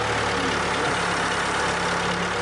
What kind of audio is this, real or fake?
real